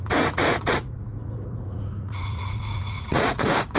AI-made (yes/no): yes